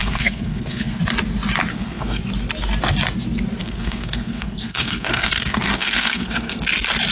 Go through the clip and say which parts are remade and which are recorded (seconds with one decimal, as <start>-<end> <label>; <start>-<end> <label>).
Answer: 0.0-1.0 remade; 1.0-1.7 recorded; 1.7-2.2 remade; 2.2-3.6 recorded; 3.6-6.6 remade; 6.6-7.1 recorded